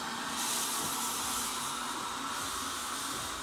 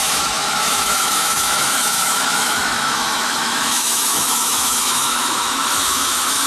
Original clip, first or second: first